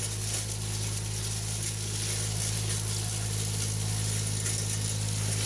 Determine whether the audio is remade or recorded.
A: recorded